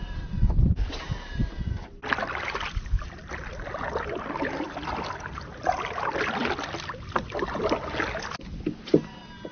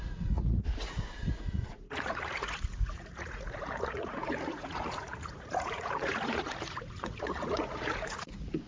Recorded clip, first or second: first